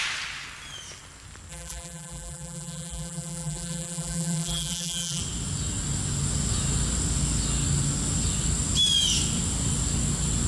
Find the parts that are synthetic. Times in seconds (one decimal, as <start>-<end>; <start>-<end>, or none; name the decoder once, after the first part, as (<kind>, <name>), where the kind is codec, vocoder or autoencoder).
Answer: 1.5-5.2 (vocoder, BigVGAN v2)